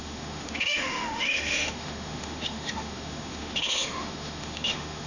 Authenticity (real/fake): fake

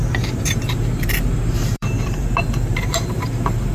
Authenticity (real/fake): fake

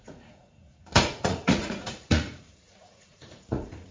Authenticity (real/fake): fake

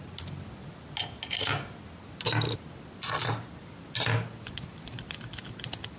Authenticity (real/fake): real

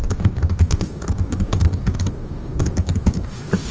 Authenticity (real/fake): fake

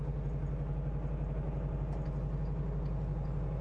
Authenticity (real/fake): real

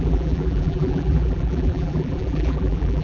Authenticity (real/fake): fake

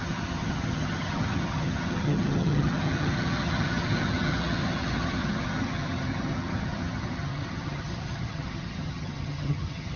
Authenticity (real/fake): fake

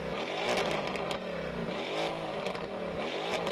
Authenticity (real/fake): real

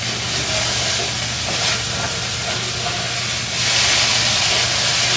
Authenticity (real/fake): real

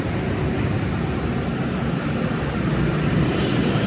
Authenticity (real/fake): real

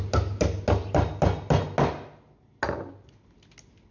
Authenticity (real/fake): real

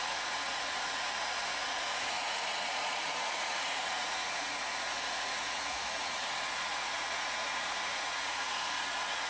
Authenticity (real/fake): fake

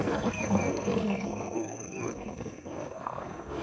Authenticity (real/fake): fake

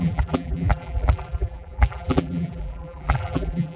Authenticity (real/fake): fake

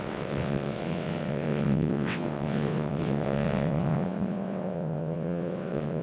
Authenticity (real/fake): fake